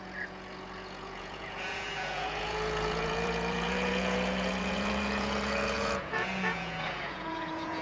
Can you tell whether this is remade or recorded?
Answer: remade